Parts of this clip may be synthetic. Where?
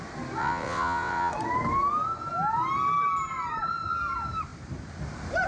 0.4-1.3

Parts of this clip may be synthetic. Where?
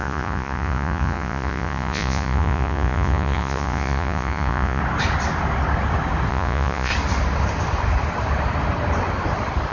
0.0-4.8; 6.3-6.9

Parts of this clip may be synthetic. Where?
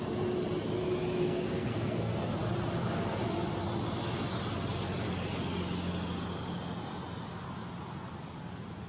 1.2-2.1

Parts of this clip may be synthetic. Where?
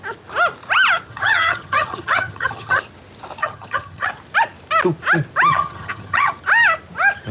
1.1-2.8; 3.4-4.1; 5.5-6.3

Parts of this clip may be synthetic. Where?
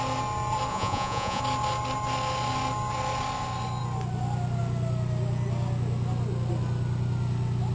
0.7-1.4